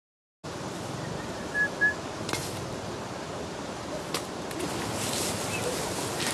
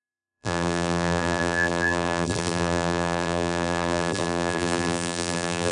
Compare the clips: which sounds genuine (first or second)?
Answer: first